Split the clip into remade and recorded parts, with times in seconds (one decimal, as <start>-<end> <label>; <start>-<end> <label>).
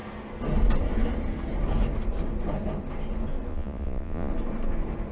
0.0-3.5 recorded; 3.5-4.3 remade; 4.3-5.1 recorded